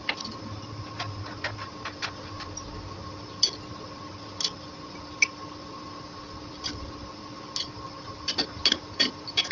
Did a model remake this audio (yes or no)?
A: no